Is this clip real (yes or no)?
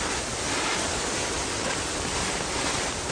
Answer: yes